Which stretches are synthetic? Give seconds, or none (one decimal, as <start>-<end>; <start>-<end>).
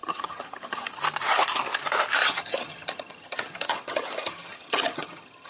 0.0-1.0; 2.2-5.5